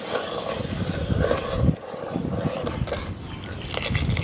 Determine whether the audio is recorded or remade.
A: recorded